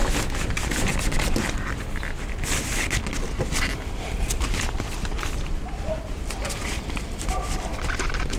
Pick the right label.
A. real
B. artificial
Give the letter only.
A